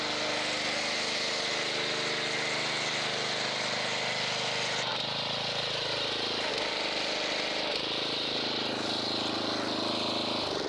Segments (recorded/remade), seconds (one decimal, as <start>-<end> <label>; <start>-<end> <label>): 0.0-10.7 recorded